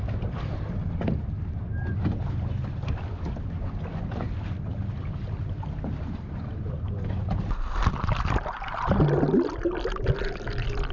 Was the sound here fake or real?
real